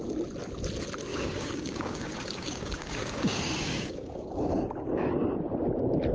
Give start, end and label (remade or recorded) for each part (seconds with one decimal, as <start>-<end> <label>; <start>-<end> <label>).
0.0-1.1 recorded; 1.1-4.3 remade; 4.3-6.1 recorded